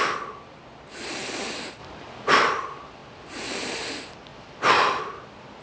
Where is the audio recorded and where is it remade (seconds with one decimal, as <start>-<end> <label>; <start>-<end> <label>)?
0.0-5.6 recorded